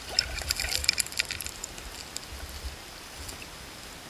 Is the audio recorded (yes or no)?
yes